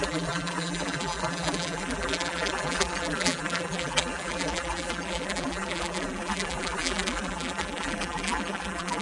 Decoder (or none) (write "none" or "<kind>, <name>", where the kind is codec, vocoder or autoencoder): vocoder, BigVGAN v2